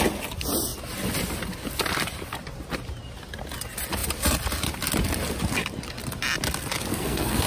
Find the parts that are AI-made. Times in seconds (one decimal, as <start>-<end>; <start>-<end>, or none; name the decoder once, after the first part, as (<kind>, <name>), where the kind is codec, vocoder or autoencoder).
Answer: 6.9-7.5 (codec, SNAC)